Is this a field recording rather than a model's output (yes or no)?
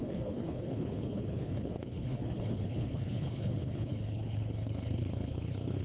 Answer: no